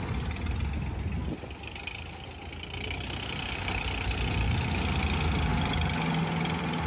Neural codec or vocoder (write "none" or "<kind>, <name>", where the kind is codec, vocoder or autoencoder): none